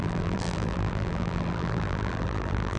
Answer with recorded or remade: remade